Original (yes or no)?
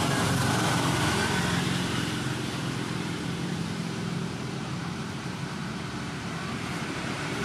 no